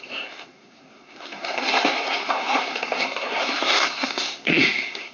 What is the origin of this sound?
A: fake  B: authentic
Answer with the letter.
A